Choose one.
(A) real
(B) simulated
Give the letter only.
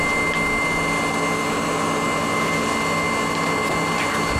A